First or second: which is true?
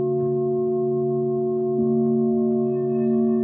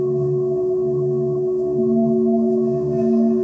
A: first